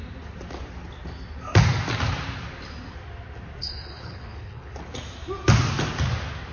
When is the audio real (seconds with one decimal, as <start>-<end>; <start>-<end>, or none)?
0.0-3.6; 4.7-6.5